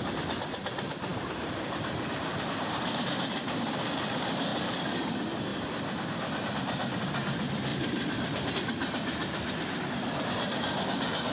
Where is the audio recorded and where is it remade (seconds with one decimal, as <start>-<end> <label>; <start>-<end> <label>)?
0.0-4.5 recorded; 4.5-5.0 remade; 5.0-5.5 recorded; 5.5-7.0 remade; 7.0-7.7 recorded; 7.7-8.5 remade; 8.5-11.3 recorded